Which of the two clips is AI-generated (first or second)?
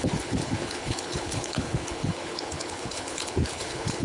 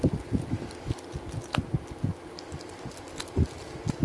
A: first